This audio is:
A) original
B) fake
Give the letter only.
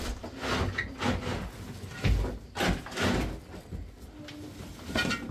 A